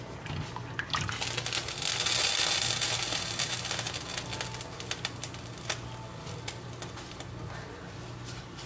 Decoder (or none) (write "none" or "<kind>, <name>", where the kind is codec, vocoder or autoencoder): none